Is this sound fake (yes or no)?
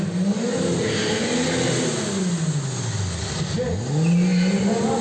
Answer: no